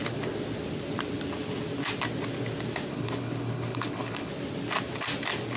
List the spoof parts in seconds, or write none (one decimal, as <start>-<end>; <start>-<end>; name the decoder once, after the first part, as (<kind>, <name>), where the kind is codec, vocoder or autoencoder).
2.9-4.3 (codec, HILCodec)